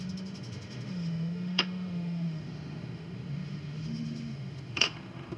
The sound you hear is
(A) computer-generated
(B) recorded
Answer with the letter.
A